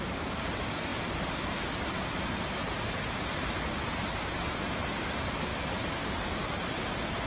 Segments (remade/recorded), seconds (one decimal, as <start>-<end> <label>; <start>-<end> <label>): 0.0-5.5 recorded; 5.5-6.1 remade; 6.1-7.3 recorded